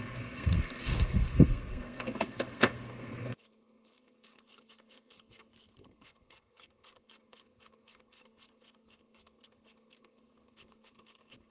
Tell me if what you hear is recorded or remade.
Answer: remade